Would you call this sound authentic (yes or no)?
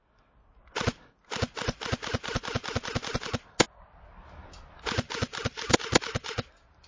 yes